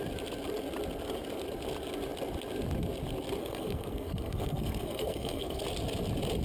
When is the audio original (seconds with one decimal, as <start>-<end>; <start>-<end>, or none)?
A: 0.0-3.4; 5.6-6.4